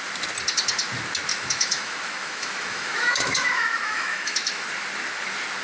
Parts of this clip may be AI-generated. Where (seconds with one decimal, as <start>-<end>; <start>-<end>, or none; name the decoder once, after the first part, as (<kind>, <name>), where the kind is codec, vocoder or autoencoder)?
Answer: 1.3-4.7 (autoencoder, DAC-VAE)